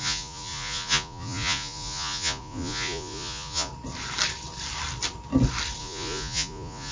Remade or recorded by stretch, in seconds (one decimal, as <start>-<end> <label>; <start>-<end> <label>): 0.0-3.7 remade; 3.7-5.8 recorded; 5.8-6.9 remade

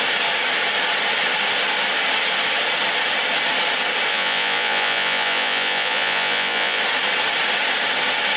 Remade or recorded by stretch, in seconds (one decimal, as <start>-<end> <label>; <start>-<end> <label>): 0.0-4.1 recorded; 4.1-6.8 remade; 6.8-8.4 recorded